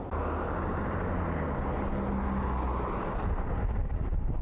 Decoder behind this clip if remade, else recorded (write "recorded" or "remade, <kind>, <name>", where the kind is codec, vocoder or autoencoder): recorded